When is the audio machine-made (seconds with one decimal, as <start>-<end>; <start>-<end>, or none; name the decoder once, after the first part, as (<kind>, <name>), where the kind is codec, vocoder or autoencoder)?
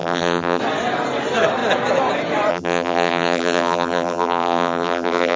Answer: 0.0-0.6 (vocoder, BigVGAN v2); 2.5-5.4